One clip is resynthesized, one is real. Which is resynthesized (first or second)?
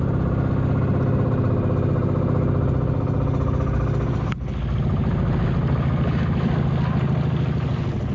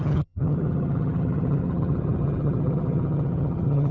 second